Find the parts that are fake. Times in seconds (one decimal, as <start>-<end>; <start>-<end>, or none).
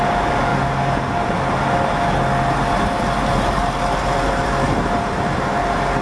0.0-0.5; 2.8-6.0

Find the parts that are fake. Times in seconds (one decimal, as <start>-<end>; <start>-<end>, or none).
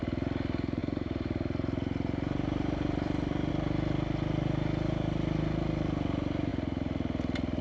0.8-3.5